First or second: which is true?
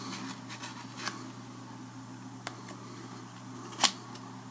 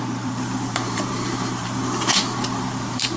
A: first